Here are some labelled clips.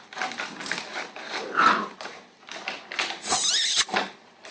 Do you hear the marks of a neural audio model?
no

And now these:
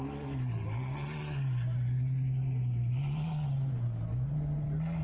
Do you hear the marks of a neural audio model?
no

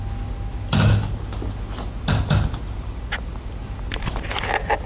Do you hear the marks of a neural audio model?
no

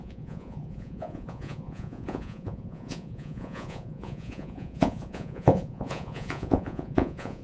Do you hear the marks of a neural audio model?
yes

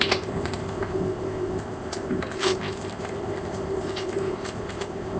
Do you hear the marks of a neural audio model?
yes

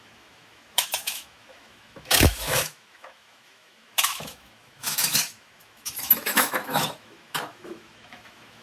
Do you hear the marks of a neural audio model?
yes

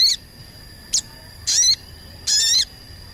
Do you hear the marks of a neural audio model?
no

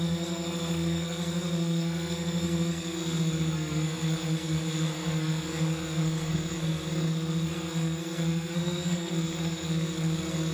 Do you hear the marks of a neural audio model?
yes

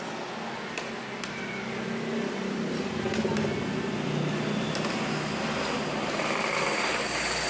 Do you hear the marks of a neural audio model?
no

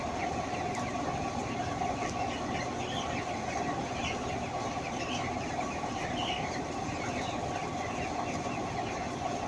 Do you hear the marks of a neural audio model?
no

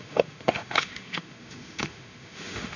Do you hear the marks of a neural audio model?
yes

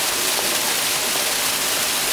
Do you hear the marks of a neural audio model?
yes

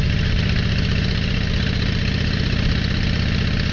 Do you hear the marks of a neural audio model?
no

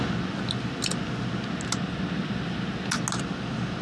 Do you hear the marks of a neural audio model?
no